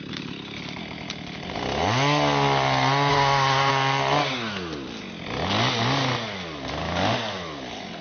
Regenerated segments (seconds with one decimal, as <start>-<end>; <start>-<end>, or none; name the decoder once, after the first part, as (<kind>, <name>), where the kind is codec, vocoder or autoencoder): 3.1-3.7 (codec, SNAC)